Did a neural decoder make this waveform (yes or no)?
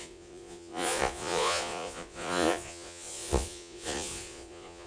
yes